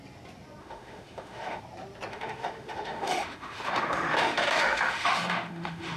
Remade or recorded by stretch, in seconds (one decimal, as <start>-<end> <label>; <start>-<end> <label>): 0.0-0.6 recorded; 0.6-1.6 remade; 1.6-2.1 recorded; 2.1-6.0 remade